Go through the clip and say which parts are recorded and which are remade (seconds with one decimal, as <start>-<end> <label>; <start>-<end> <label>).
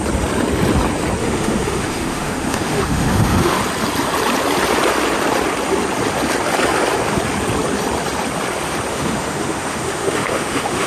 0.0-1.2 recorded; 1.2-3.6 remade; 3.6-8.9 recorded; 8.9-10.9 remade